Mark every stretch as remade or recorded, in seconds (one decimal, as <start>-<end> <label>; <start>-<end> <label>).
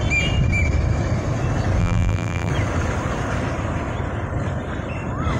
0.0-1.8 recorded; 1.8-2.5 remade; 2.5-5.4 recorded